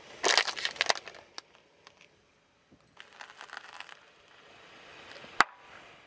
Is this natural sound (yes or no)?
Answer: yes